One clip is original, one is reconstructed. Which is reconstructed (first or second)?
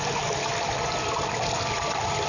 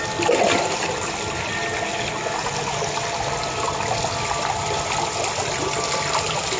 first